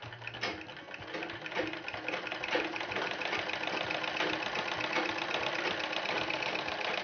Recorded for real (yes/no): yes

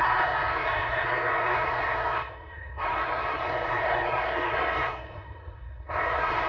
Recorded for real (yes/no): no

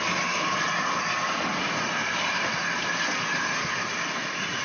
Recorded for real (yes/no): yes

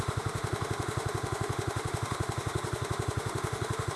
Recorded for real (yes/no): no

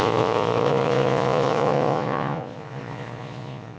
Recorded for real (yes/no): no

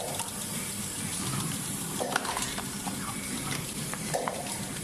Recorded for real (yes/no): no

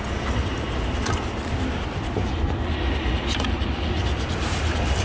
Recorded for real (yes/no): yes